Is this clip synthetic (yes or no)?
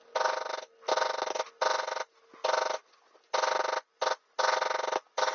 no